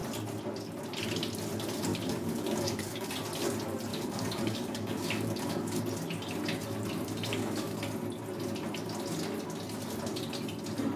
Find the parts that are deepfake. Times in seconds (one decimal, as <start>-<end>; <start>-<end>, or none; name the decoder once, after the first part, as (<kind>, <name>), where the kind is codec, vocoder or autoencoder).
1.9-3.1 (codec, DAC); 3.9-5.8; 7.3-7.8